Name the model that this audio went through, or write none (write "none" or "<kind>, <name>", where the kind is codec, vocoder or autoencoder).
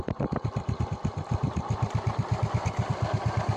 none